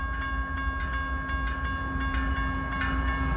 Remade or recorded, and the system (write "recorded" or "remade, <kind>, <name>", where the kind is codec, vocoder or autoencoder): recorded